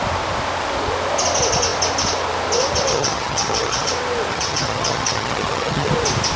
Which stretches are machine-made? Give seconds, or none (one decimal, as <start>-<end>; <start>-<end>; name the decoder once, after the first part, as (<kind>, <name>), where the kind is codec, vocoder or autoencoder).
2.9-3.9 (vocoder, HiFi-GAN); 4.3-5.9